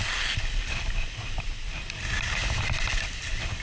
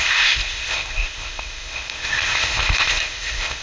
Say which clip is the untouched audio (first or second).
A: first